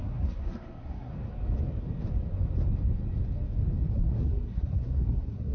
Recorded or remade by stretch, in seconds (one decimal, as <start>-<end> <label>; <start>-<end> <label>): 0.0-1.1 remade; 1.1-3.9 recorded; 3.9-5.5 remade